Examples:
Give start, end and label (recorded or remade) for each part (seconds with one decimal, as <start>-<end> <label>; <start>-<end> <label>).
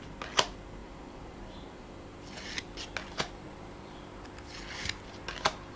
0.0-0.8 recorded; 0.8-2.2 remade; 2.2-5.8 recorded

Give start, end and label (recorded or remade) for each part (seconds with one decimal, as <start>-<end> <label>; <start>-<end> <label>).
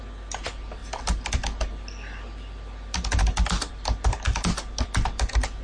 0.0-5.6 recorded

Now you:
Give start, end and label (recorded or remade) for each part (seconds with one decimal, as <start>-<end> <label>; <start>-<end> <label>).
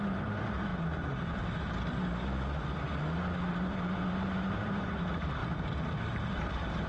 0.0-0.7 remade; 0.7-3.5 recorded; 3.5-5.4 remade; 5.4-6.0 recorded; 6.0-6.9 remade